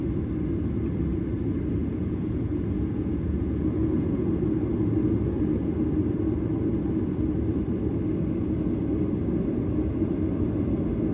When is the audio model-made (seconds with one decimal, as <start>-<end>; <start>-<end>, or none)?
1.8-4.4